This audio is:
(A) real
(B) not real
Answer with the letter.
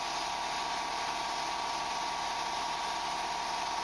A